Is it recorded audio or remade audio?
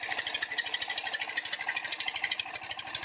recorded